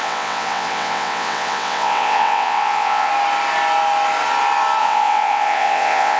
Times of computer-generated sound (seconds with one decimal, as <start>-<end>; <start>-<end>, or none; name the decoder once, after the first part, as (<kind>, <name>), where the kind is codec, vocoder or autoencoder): 0.0-3.1 (vocoder, WaveNeXt); 4.8-6.2